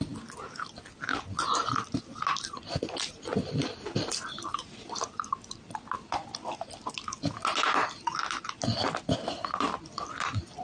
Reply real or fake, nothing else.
real